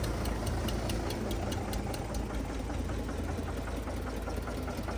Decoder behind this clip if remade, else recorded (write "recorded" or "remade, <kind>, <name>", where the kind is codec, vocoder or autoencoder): recorded